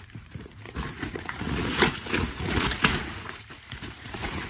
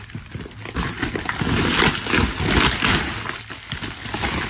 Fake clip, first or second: first